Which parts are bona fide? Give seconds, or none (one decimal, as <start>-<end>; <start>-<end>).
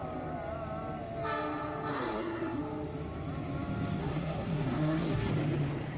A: 0.0-1.9; 2.6-4.0; 5.3-6.0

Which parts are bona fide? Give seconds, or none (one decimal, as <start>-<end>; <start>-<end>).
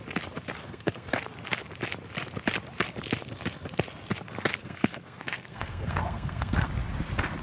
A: 0.0-0.6; 1.1-4.6; 6.7-7.4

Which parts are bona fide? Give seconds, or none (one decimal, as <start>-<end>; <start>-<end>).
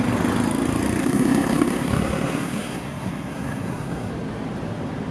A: 0.0-1.0; 4.1-5.1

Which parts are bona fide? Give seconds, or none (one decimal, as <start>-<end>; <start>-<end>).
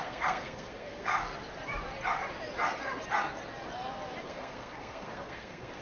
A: 1.1-4.2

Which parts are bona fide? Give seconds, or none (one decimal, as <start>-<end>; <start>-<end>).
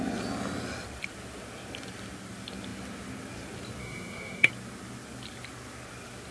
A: 0.0-3.8; 4.5-6.3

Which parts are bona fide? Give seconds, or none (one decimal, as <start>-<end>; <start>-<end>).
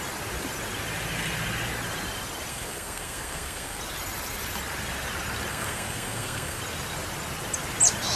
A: 0.0-2.5; 3.8-5.5; 6.6-8.2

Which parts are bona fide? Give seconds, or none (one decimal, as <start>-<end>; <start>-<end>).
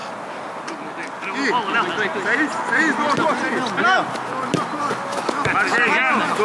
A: 0.0-6.4